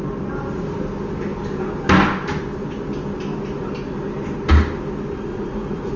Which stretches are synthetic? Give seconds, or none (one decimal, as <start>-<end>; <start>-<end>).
5.3-6.0